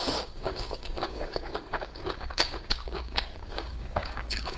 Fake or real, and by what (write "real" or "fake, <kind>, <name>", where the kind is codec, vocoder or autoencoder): fake, codec, DAC